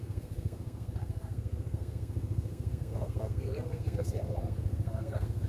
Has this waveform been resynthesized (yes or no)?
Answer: yes